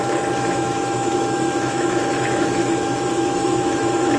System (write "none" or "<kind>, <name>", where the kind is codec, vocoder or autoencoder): autoencoder, DAC-VAE